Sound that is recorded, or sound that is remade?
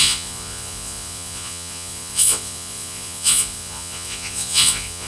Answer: remade